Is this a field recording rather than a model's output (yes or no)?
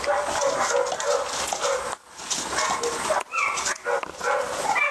yes